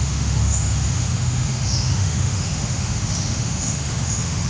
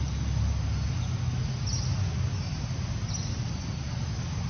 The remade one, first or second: first